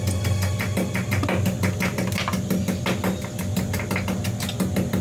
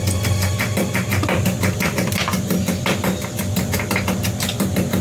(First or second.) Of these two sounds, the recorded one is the first